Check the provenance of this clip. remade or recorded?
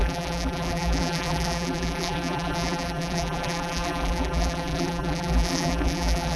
remade